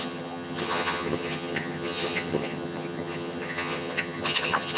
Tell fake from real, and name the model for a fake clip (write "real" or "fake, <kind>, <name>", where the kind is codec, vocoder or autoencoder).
fake, vocoder, HiFi-GAN